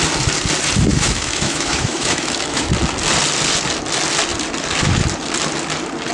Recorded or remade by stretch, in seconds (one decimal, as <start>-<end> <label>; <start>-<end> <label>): 0.0-0.9 recorded; 0.9-2.7 remade; 2.7-6.1 recorded